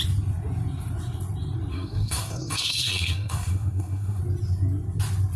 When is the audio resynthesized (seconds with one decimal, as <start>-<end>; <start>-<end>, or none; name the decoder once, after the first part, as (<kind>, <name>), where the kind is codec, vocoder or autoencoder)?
1.7-4.2 (codec, SNAC)